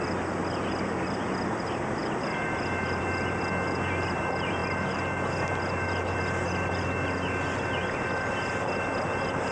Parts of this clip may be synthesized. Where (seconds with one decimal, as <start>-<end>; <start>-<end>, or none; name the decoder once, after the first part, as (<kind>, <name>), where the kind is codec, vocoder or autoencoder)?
2.0-3.0 (vocoder, BigVGAN v2); 4.6-8.3